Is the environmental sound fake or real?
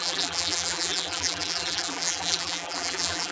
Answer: fake